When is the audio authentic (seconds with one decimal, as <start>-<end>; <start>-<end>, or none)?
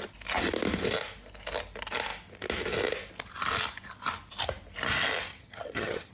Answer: 0.0-5.3